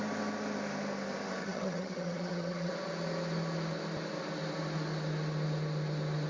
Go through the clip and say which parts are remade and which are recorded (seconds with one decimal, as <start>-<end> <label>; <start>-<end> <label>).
0.0-1.4 recorded; 1.4-2.7 remade; 2.7-6.3 recorded